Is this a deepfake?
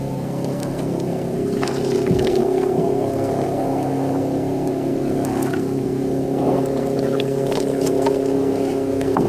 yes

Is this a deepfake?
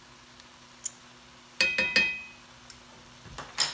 no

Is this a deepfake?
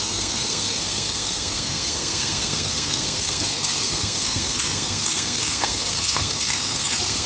yes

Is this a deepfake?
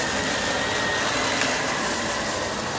no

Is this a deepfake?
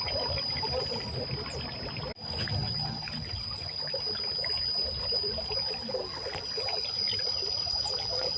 no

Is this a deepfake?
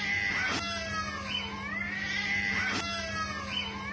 no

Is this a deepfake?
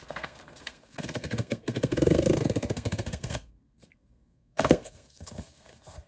yes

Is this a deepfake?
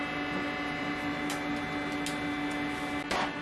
no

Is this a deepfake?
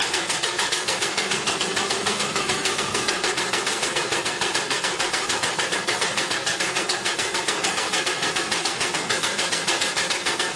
yes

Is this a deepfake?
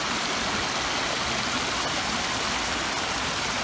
no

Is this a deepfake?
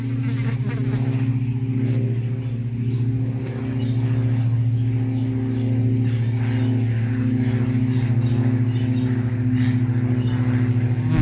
no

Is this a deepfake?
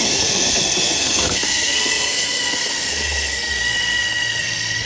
yes